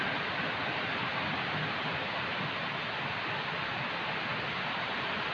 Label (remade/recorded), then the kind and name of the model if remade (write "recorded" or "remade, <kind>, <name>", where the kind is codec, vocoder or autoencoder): recorded